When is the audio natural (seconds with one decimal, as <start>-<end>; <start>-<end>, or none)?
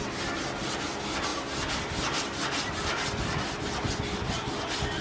0.0-5.0